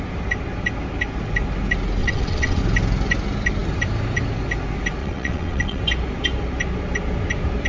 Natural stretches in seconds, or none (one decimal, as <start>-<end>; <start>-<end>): 0.0-2.0; 2.6-5.0; 5.8-7.7